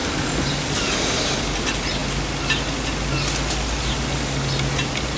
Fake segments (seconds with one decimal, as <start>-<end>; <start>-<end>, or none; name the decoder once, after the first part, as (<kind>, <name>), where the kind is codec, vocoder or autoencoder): 0.0-1.4 (vocoder, BigVGAN v2)